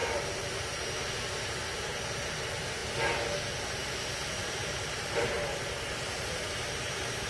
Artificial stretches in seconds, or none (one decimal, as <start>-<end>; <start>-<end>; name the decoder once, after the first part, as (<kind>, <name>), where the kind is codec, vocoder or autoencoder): 0.0-0.5 (vocoder, BigVGAN v2); 4.4-7.3